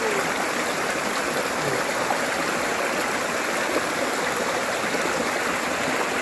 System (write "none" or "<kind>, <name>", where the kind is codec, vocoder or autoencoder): none